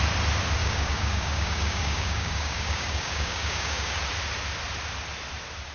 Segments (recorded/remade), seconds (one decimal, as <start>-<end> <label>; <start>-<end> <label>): 0.0-0.6 recorded; 0.6-4.0 remade; 4.0-5.7 recorded